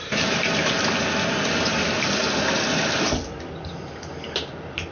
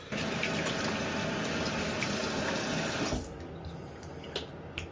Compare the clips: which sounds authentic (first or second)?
second